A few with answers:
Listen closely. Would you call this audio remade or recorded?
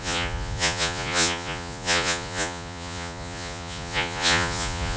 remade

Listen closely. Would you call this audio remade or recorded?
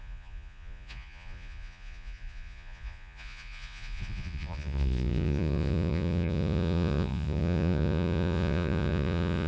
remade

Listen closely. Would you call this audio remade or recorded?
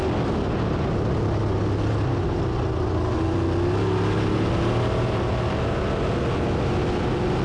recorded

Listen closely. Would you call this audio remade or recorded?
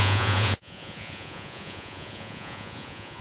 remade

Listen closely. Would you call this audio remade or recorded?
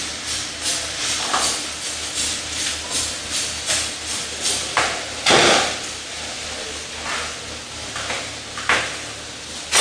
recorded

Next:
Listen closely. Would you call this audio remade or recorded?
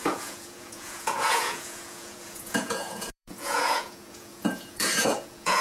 remade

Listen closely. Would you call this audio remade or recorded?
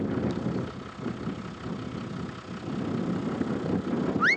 recorded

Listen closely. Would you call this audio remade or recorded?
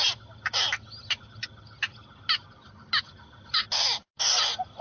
recorded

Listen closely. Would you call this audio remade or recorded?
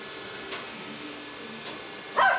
recorded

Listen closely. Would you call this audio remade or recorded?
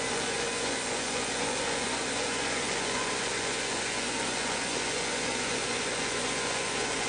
remade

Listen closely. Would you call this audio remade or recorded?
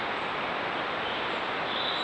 recorded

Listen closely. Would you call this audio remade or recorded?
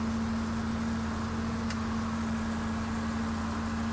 recorded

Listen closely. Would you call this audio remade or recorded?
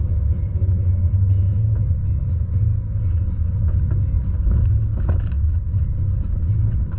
recorded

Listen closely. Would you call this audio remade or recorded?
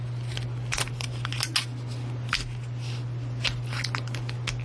recorded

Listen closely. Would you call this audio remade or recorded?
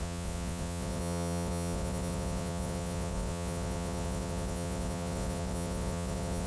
remade